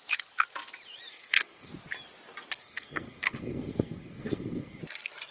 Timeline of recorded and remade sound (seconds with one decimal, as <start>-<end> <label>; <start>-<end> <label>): 0.0-1.1 recorded; 1.1-1.7 remade; 1.7-2.6 recorded; 2.6-4.8 remade; 4.8-5.3 recorded